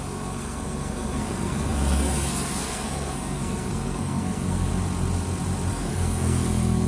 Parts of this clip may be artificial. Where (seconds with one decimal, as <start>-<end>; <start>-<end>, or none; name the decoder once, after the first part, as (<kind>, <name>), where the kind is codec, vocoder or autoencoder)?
0.0-4.7 (codec, SNAC); 5.7-6.9